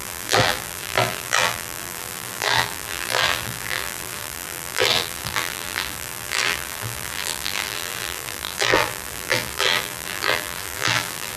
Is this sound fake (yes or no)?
yes